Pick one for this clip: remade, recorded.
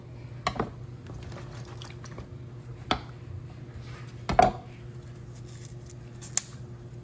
recorded